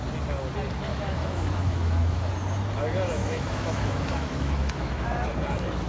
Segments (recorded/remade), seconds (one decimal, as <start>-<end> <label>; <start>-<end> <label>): 0.0-0.9 recorded; 0.9-2.3 remade; 2.3-3.2 recorded; 3.2-5.3 remade; 5.3-5.9 recorded